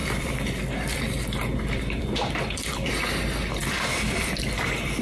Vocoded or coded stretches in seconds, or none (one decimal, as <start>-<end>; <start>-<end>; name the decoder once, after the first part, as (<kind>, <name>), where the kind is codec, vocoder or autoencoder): 0.0-3.0 (vocoder, BigVGAN v2); 3.6-5.0